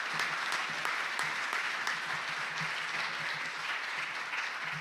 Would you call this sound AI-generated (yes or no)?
no